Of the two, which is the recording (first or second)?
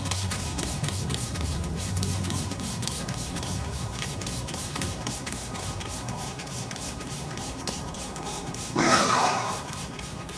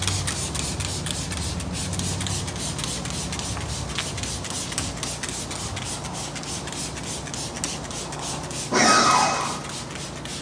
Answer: second